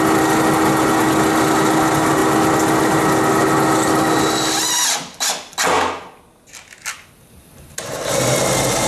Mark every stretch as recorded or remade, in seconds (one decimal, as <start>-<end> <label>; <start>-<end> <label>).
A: 0.0-8.9 recorded